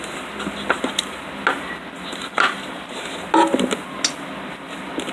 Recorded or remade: recorded